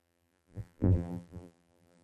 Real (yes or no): no